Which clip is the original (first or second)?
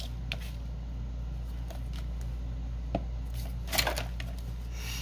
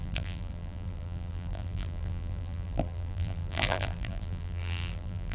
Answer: first